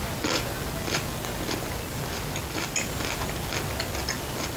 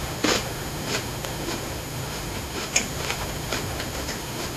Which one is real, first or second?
first